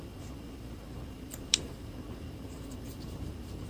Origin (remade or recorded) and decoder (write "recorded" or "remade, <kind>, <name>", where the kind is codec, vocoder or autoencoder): remade, vocoder, BigVGAN v2